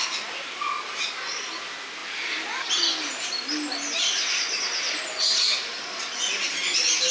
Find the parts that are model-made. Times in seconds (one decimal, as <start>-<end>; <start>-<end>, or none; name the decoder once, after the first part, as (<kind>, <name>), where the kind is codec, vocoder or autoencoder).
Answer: none